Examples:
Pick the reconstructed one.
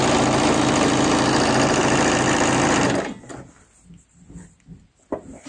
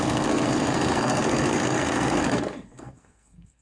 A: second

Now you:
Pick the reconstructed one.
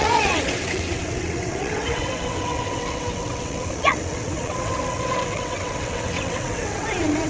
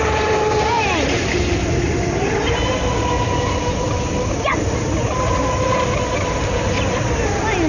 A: first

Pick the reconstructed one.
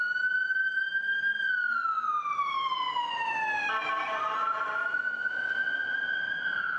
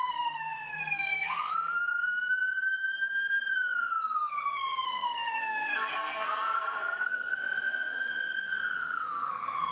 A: second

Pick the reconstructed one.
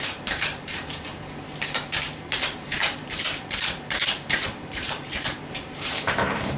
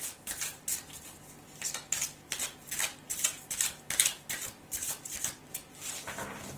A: first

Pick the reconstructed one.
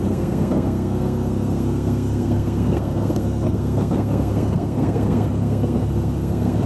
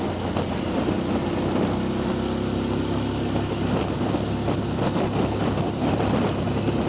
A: first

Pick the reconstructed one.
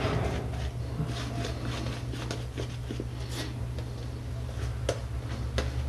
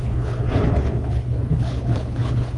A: second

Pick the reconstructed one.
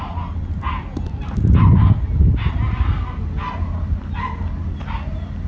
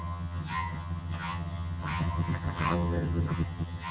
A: second